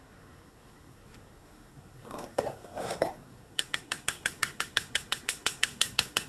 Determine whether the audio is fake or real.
fake